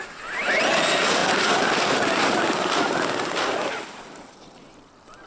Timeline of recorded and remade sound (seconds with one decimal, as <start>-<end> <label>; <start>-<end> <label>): 0.0-5.3 recorded